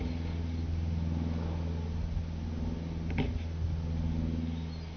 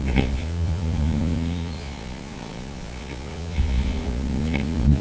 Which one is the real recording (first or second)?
first